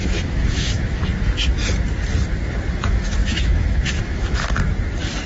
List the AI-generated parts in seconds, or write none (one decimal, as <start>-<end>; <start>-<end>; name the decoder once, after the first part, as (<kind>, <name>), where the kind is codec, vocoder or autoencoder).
0.0-1.1 (autoencoder, DAC-VAE); 2.7-4.6